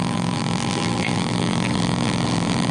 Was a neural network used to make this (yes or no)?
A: yes